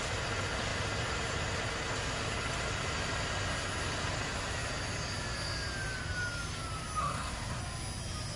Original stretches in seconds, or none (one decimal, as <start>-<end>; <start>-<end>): 0.0-7.0; 7.6-8.4